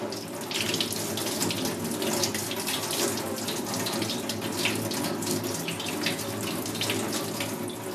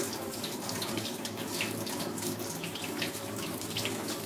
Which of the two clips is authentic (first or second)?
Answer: first